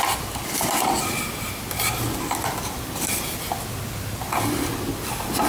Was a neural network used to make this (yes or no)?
no